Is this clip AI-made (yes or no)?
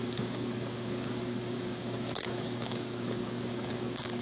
yes